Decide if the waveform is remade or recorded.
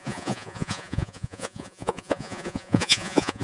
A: remade